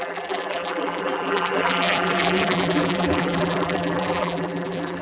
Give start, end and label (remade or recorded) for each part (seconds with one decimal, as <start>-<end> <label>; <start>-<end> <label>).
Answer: 0.0-5.0 remade